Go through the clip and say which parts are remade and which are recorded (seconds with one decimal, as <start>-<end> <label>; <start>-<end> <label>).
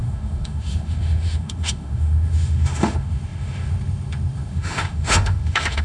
0.0-5.8 remade